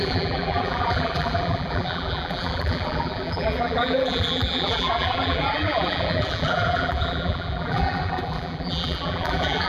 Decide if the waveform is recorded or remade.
remade